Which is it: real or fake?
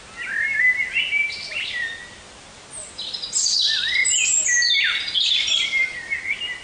real